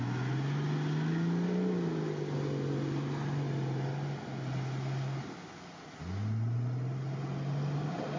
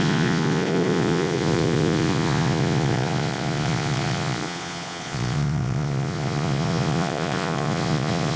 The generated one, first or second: second